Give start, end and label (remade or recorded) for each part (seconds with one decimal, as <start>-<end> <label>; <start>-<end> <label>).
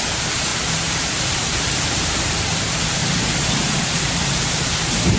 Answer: 0.0-3.0 remade; 3.0-3.5 recorded; 3.5-5.2 remade